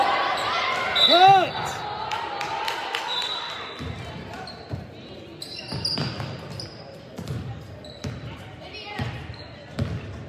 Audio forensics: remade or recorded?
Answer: recorded